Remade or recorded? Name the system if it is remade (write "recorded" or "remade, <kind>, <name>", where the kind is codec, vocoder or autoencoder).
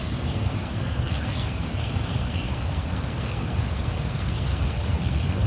remade, codec, SNAC